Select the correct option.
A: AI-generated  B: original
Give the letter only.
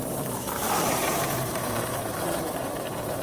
A